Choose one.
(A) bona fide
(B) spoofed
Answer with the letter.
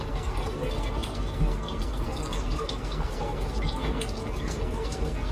B